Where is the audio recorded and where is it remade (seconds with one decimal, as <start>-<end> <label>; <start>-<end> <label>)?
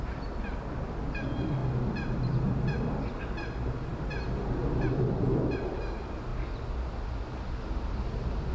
0.0-8.5 recorded